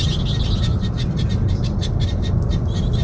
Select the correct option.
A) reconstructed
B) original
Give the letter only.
B